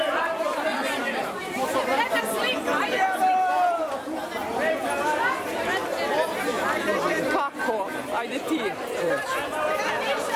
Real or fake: fake